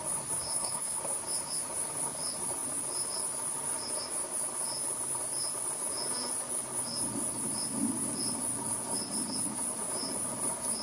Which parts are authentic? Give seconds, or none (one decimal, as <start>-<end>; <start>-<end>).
0.0-0.5; 1.0-10.8